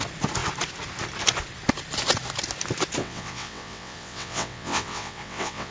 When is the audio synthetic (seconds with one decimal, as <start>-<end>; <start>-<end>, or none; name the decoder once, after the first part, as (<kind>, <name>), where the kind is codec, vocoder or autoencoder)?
3.0-5.7 (vocoder, WaveNeXt)